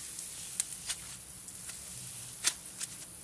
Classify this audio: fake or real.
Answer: real